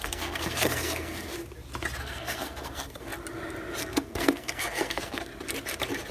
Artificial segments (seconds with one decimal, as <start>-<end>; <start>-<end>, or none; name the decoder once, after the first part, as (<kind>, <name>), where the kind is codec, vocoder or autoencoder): 0.0-1.3 (codec, SNAC); 2.0-3.1; 3.8-5.3